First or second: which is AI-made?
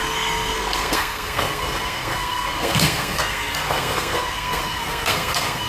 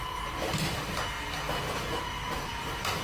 first